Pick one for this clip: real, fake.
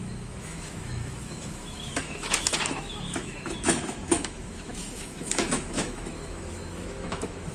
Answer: fake